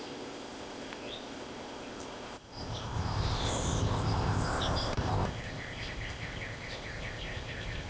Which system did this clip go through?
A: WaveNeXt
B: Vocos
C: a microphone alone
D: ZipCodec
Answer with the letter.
D